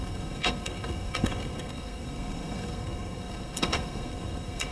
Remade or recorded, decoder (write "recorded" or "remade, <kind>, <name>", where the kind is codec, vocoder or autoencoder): remade, codec, SNAC